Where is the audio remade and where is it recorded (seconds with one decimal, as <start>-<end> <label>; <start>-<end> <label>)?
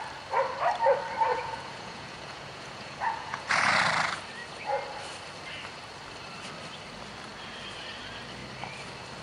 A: 0.0-1.3 recorded; 1.3-3.7 remade; 3.7-9.2 recorded